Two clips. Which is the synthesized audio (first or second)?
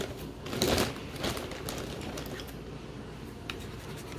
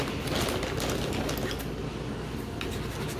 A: first